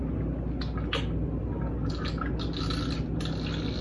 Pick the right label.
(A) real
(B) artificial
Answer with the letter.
A